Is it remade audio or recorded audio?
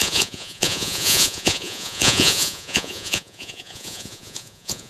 remade